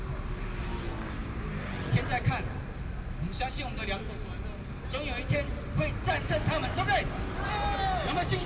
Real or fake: real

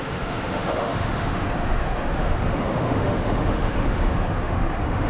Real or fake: fake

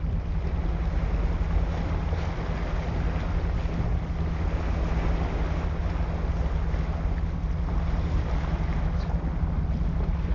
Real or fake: real